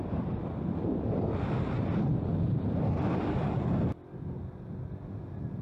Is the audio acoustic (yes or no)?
yes